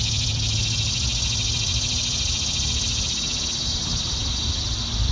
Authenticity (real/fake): fake